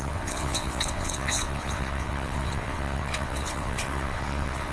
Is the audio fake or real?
fake